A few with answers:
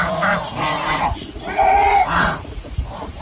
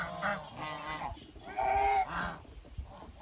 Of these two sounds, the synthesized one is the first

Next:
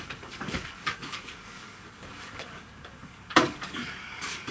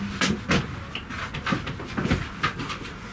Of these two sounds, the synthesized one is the first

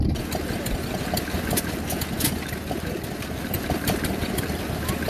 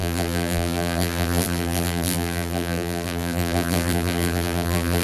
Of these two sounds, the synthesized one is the second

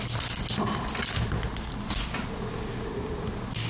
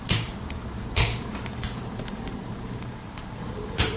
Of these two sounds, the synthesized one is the second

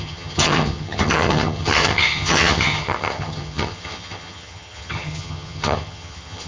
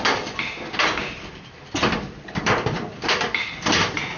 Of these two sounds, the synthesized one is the first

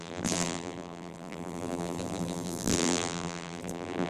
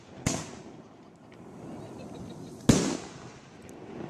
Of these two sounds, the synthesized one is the first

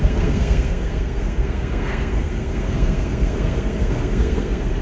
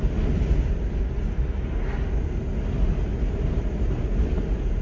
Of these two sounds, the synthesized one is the first